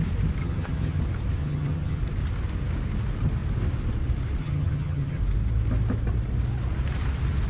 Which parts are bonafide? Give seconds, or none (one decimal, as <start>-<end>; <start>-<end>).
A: 0.0-0.4; 1.0-1.4; 2.0-4.4; 5.2-7.5